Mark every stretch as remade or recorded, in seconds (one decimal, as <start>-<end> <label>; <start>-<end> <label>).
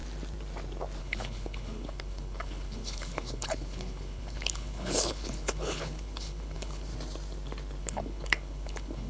0.0-1.0 recorded; 1.0-6.9 remade; 6.9-7.8 recorded; 7.8-9.1 remade